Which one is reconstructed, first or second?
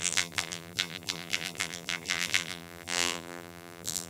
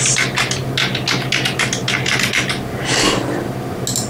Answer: first